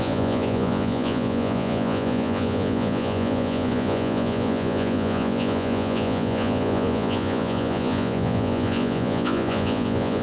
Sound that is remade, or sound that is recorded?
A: remade